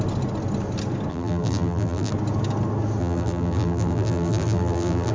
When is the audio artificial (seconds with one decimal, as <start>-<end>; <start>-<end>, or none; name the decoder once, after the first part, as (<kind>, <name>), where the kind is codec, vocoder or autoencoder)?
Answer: 1.1-2.1 (vocoder, BigVGAN v2); 3.0-5.1